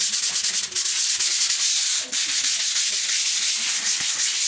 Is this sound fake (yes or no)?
no